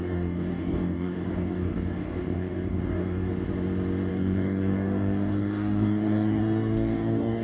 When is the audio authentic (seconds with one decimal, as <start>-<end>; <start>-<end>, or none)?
3.3-4.1